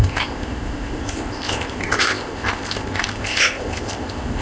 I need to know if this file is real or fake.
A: fake